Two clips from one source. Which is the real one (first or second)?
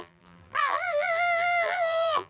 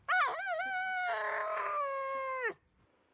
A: second